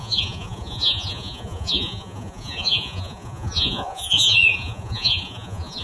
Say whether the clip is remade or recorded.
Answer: remade